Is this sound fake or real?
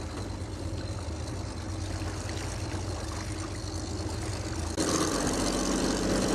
real